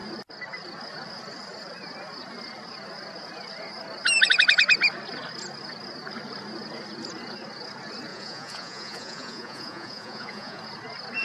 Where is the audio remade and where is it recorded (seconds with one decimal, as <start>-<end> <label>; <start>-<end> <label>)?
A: 0.0-8.1 recorded; 8.1-10.6 remade; 10.6-11.2 recorded